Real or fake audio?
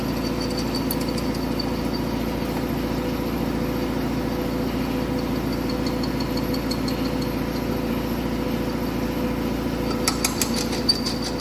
real